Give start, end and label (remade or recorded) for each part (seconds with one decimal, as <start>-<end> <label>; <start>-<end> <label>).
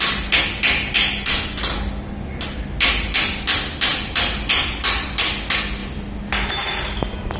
0.0-3.9 recorded; 3.9-4.5 remade; 4.5-7.4 recorded